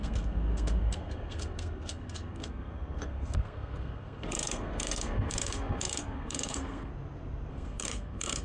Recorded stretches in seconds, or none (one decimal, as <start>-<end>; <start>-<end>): 6.9-7.5